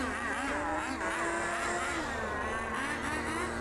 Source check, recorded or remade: recorded